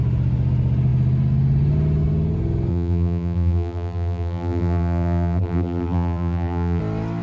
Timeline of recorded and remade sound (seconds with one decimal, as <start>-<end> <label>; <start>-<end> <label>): 0.0-2.7 recorded; 2.7-6.8 remade; 6.8-7.2 recorded